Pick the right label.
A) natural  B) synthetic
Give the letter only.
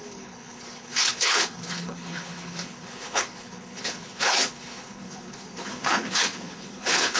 B